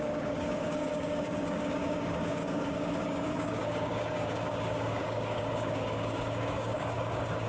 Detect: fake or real fake